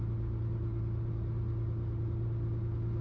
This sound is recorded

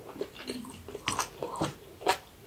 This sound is recorded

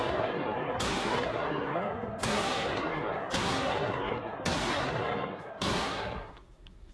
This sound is remade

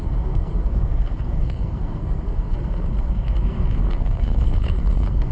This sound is remade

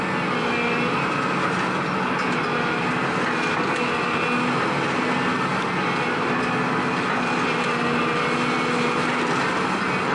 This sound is recorded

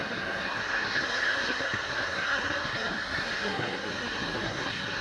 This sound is remade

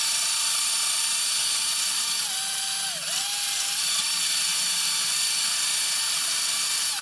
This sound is recorded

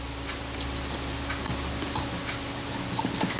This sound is recorded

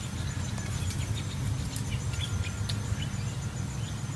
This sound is recorded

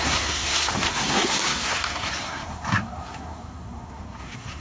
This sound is remade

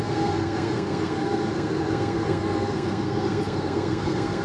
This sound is remade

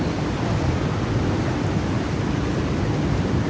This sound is recorded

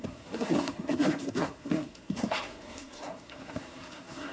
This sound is remade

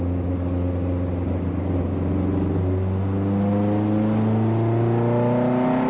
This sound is recorded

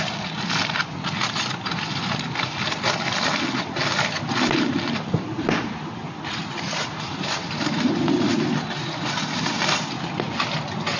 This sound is recorded